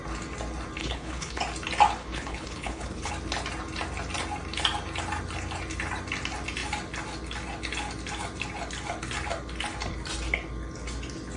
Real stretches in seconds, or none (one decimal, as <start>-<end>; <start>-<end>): 0.0-0.8; 1.4-2.0; 3.1-11.4